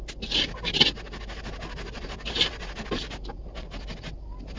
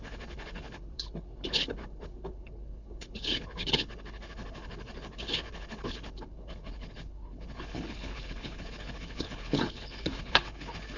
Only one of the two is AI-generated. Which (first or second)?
second